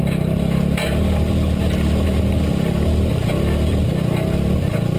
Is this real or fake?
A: real